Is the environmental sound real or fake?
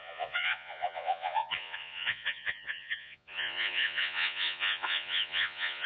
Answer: fake